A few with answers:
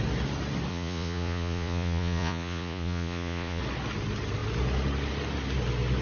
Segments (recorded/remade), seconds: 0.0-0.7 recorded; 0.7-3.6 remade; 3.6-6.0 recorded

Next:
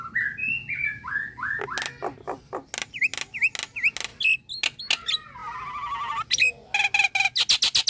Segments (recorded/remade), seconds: 0.0-0.4 recorded; 0.4-1.6 remade; 1.6-7.9 recorded

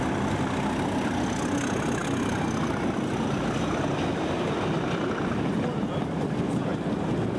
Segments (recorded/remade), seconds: 0.0-7.4 recorded

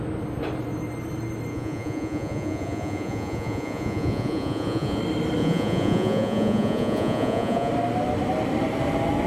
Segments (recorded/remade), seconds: 0.0-1.5 recorded; 1.5-5.0 remade; 5.0-5.4 recorded; 5.4-7.7 remade; 7.7-9.3 recorded

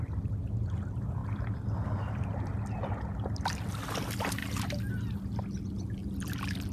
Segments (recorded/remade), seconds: 0.0-6.7 recorded

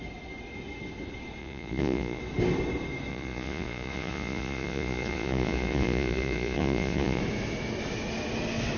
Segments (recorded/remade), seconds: 0.0-1.4 recorded; 1.4-2.2 remade; 2.2-3.1 recorded; 3.1-7.2 remade; 7.2-8.8 recorded

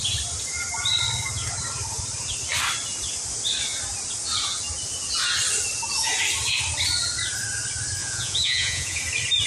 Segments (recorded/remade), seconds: 0.0-8.0 recorded; 8.0-9.0 remade; 9.0-9.5 recorded